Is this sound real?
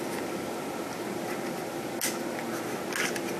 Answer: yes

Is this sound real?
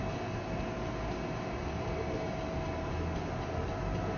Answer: yes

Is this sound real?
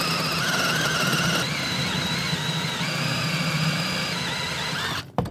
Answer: yes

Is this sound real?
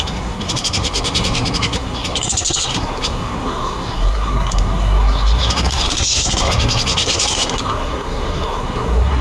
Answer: no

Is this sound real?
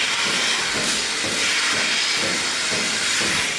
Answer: yes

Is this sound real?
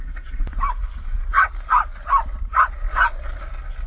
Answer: yes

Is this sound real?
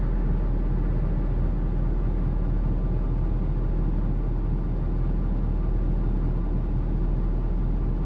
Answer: yes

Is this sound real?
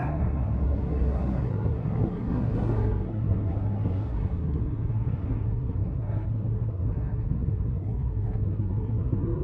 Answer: no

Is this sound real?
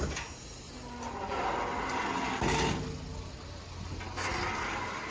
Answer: yes